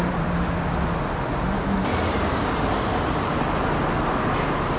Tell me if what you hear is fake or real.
real